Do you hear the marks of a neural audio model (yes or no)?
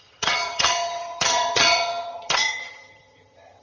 yes